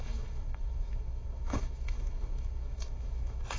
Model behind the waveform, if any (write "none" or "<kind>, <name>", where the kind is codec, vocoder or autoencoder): autoencoder, DAC-VAE